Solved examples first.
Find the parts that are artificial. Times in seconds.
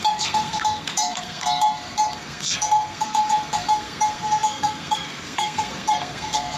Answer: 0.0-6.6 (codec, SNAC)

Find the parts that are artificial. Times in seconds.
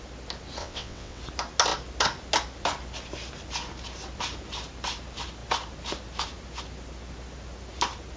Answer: 0.6-1.2 (vocoder, WaveNeXt)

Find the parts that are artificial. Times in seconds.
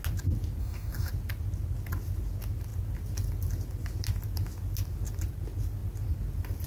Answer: 0.6-1.1 (codec, DAC)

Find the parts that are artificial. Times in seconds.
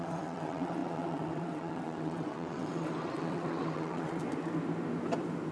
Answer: 0.0-4.2 (vocoder, WaveNeXt)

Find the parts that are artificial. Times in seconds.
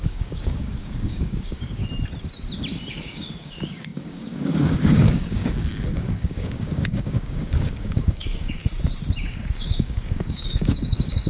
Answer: 0.0-1.8 (codec, DAC); 2.9-8.6; 9.2-11.3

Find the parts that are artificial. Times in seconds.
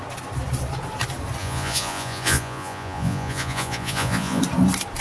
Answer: 1.4-4.4 (vocoder, Vocos)